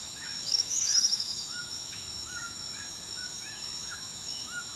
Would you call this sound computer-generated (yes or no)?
yes